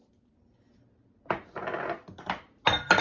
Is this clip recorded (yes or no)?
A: yes